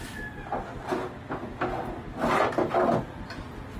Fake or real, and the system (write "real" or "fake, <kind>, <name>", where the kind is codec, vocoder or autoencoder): real